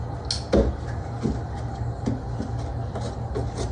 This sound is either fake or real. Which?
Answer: real